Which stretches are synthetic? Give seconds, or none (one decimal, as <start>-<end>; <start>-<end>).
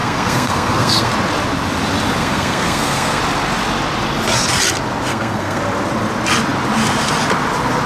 0.0-1.1; 2.2-3.2; 5.1-5.6